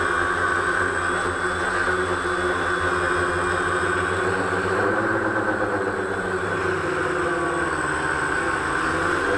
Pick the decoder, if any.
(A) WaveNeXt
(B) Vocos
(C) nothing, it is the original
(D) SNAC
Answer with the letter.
C